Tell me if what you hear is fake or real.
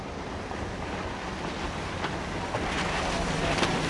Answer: real